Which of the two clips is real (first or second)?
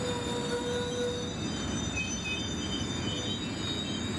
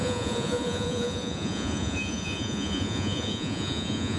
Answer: first